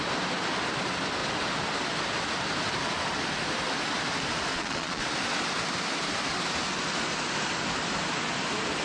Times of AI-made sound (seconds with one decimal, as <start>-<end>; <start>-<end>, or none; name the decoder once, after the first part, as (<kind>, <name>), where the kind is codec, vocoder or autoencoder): 4.5-5.1 (vocoder, Vocos)